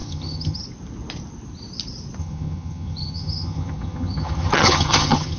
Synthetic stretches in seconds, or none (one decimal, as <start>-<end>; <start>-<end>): 0.0-0.6; 2.2-5.4